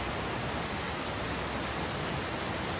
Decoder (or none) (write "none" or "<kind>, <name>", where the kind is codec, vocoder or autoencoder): none